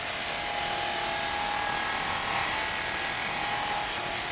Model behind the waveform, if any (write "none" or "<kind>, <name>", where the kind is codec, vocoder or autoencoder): none